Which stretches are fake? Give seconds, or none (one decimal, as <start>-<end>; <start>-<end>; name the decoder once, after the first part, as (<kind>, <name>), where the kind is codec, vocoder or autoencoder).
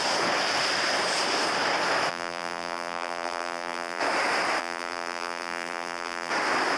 2.1-4.0 (vocoder, BigVGAN v2); 4.6-6.3